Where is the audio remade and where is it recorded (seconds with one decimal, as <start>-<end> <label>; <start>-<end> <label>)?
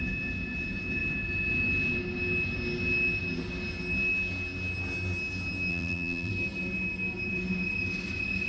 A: 0.0-5.7 recorded; 5.7-6.3 remade; 6.3-8.5 recorded